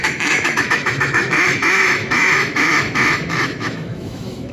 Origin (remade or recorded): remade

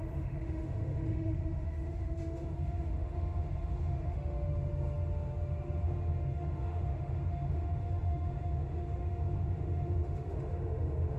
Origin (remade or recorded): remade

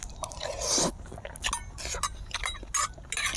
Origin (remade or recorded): recorded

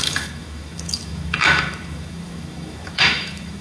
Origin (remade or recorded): remade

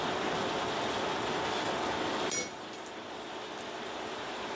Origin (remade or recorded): recorded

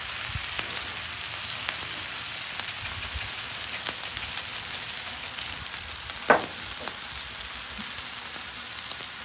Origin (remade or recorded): recorded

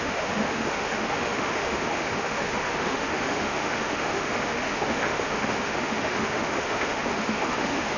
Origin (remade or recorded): remade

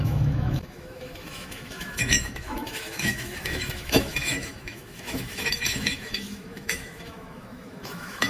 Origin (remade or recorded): remade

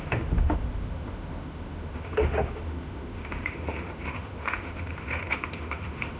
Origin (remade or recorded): remade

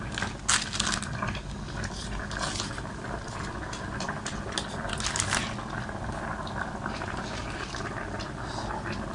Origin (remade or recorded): recorded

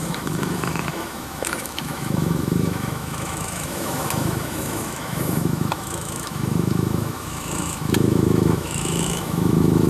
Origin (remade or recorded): remade